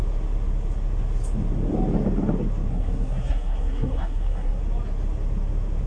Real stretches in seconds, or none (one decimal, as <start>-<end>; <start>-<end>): 0.0-2.7; 4.6-5.9